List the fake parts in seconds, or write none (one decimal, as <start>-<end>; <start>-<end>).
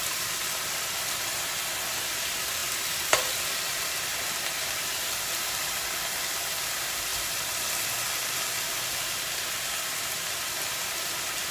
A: 7.1-8.2